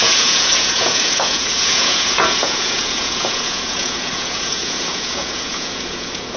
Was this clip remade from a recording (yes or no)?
yes